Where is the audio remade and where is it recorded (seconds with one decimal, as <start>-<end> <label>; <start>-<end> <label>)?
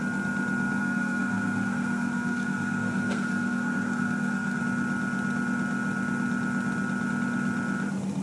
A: 0.0-0.8 recorded; 0.8-4.6 remade; 4.6-8.2 recorded